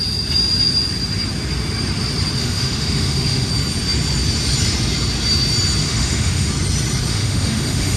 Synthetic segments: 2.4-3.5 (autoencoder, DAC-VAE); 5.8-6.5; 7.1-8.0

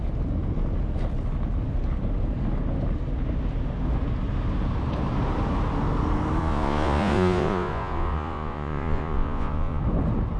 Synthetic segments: 6.4-9.8 (vocoder, Vocos)

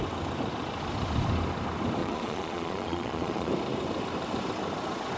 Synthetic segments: 2.0-3.5 (vocoder, Vocos)

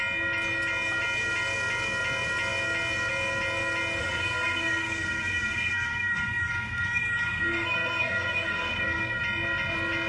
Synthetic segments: 4.0-9.2 (codec, SNAC)